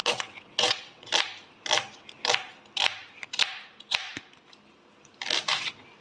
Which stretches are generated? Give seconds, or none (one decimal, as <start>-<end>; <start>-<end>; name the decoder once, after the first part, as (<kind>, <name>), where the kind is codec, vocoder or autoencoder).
0.0-1.1 (vocoder, WaveNeXt)